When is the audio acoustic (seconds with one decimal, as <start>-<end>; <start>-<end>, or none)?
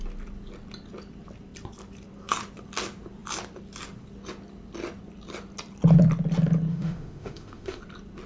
0.0-6.7; 7.8-8.3